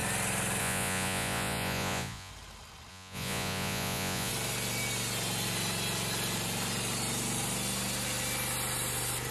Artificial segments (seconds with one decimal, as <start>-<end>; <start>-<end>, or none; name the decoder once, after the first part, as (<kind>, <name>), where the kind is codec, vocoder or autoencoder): 0.6-2.3 (vocoder, Vocos); 2.9-4.3